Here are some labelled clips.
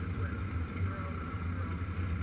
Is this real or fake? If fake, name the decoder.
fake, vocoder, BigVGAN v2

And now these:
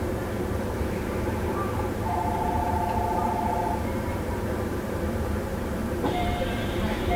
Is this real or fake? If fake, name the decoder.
fake, vocoder, BigVGAN v2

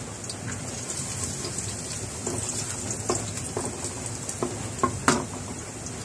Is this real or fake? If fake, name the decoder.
real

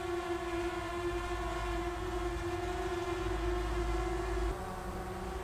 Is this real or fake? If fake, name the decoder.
real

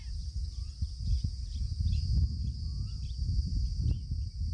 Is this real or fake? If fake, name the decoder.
real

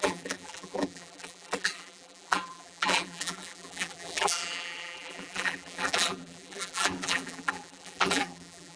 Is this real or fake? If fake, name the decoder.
fake, vocoder, BigVGAN v2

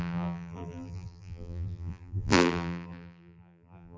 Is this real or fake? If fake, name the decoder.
fake, vocoder, BigVGAN v2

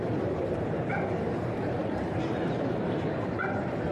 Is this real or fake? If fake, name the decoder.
fake, vocoder, BigVGAN v2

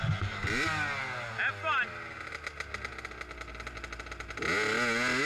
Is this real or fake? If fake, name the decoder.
real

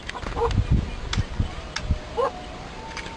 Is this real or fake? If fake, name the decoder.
real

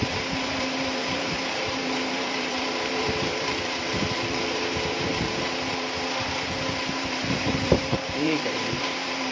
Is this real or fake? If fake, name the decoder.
fake, vocoder, BigVGAN v2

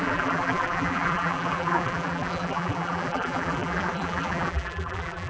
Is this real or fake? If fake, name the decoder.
fake, vocoder, BigVGAN v2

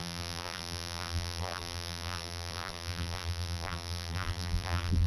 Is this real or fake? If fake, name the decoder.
fake, vocoder, BigVGAN v2